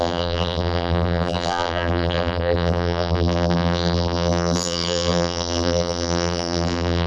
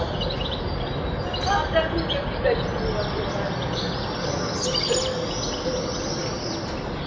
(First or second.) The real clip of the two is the second